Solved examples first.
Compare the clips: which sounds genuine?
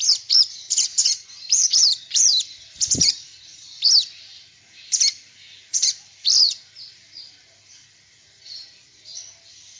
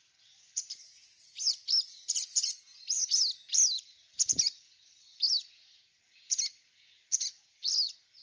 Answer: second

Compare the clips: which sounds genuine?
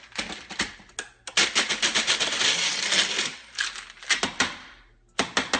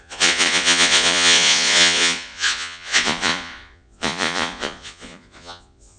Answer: first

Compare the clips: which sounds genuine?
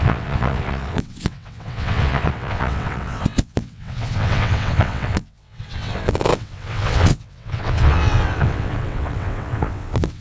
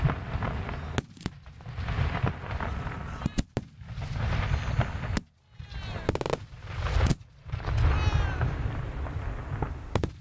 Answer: second